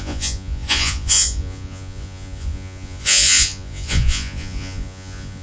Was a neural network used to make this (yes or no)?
yes